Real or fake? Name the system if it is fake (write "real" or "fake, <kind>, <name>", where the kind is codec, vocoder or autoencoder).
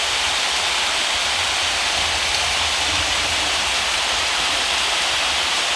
real